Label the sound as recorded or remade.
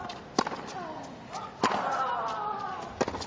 recorded